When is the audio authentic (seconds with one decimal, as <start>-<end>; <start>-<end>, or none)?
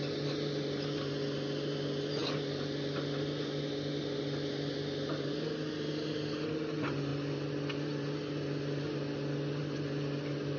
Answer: 0.0-10.6